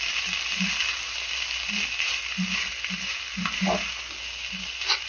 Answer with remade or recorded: recorded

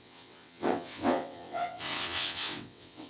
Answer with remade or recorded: remade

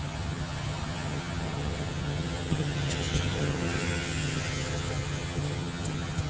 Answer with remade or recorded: remade